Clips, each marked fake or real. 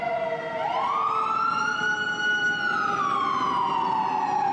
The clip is real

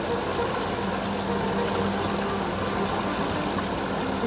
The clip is real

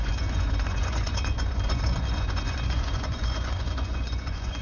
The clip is fake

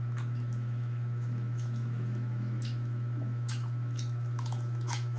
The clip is fake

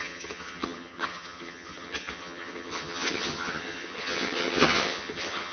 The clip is fake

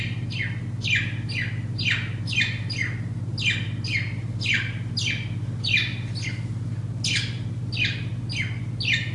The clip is real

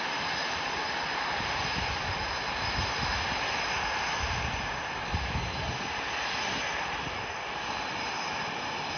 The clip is real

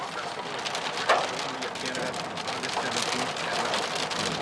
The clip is real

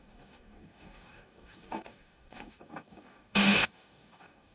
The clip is fake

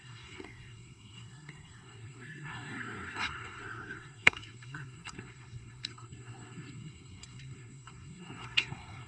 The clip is fake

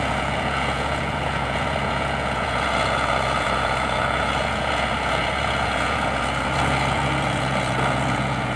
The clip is fake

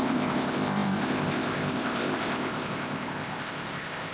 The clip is fake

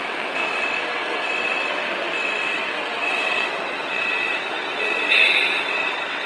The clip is fake